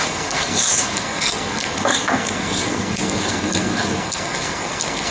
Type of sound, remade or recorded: remade